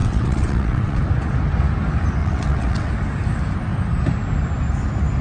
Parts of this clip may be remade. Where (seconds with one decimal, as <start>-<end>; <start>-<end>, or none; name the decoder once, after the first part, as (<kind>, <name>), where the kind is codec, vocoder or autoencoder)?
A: 0.0-1.0 (vocoder, WaveNeXt); 2.2-2.9